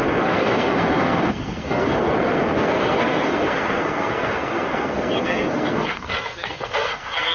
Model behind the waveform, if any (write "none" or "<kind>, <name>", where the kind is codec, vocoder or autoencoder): codec, SNAC